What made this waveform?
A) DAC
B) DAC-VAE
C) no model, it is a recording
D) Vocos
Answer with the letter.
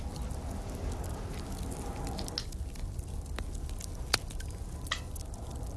C